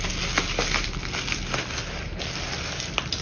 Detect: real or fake real